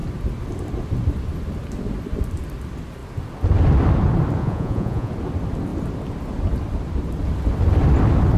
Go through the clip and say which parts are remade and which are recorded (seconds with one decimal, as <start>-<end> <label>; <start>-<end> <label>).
0.0-4.4 recorded; 4.4-5.1 remade; 5.1-8.4 recorded